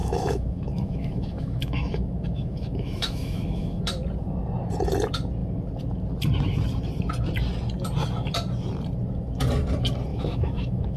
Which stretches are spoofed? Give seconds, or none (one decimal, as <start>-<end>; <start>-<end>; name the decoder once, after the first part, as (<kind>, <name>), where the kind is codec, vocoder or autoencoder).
0.0-3.8 (autoencoder, DAC-VAE); 10.1-11.0